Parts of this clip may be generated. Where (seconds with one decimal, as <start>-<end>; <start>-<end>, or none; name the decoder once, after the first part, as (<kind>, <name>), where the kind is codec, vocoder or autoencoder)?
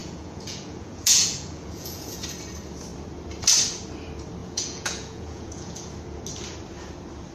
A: 0.0-2.2 (vocoder, Vocos); 4.4-5.9